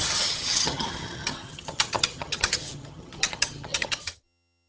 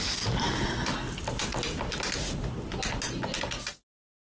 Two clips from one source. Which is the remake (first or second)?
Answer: first